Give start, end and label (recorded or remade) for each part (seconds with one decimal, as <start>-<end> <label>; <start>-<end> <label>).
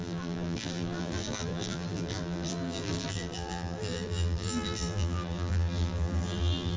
0.0-6.8 remade